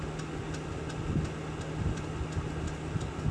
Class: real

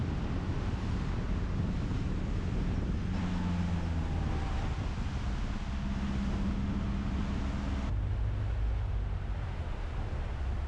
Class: real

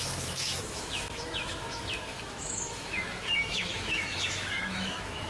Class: fake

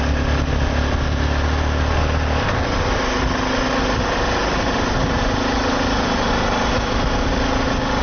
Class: real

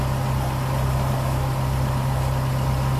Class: real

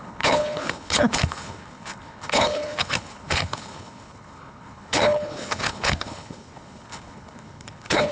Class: fake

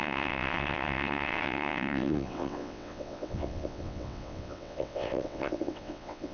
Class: fake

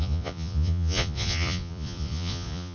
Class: fake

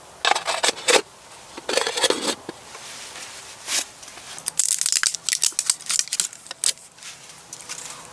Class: real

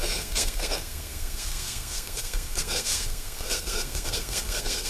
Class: fake